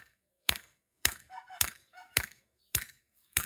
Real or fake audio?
fake